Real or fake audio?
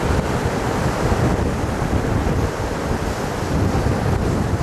real